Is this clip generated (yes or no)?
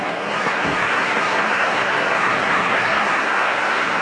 yes